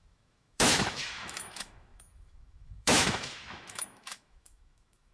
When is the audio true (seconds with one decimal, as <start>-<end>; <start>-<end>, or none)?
none